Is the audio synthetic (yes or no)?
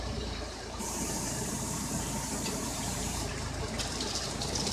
yes